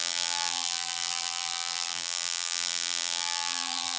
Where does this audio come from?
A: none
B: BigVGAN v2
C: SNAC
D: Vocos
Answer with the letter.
B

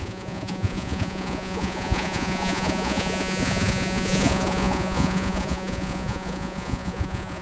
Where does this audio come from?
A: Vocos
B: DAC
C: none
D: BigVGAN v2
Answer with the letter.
A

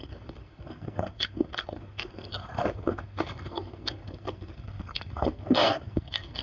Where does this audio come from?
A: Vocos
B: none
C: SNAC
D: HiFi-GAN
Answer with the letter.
C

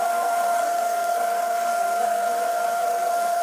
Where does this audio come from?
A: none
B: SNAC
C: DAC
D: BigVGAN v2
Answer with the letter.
B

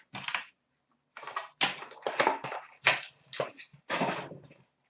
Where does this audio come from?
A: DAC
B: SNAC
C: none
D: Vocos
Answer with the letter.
C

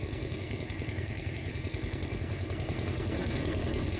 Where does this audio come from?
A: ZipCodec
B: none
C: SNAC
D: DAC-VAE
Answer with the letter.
C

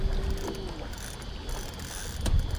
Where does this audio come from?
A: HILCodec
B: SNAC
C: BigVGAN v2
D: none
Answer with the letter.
D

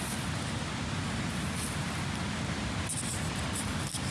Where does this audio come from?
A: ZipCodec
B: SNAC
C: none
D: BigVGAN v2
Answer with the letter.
C